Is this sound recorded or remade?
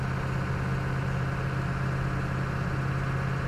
recorded